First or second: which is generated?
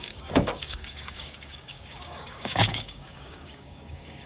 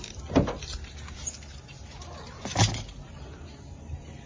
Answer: first